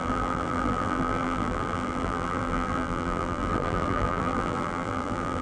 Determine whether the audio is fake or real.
fake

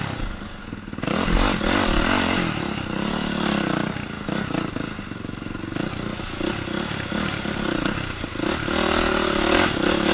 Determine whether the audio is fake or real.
real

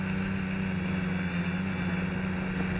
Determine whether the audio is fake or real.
real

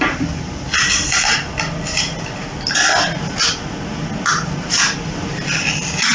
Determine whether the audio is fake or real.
real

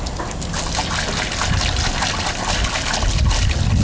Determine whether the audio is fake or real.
real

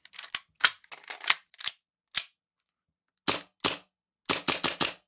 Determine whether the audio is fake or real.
real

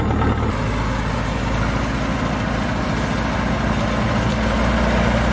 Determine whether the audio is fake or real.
real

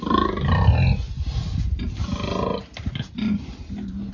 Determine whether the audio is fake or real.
real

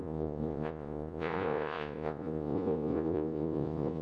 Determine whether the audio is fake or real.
fake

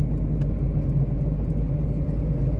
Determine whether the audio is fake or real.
real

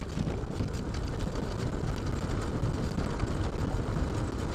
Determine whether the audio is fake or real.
real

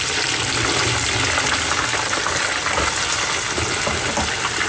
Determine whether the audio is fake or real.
real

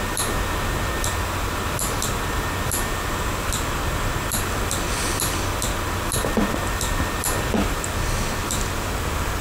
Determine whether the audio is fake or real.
real